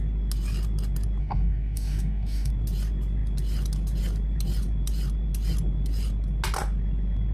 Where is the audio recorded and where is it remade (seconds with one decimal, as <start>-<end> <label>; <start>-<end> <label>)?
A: 0.0-1.2 recorded; 1.2-2.5 remade; 2.5-7.3 recorded